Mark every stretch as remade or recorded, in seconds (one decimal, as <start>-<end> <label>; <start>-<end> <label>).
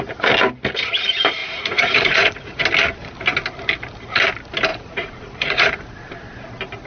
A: 0.0-1.4 recorded; 1.4-2.6 remade; 2.6-4.7 recorded; 4.7-6.0 remade; 6.0-6.9 recorded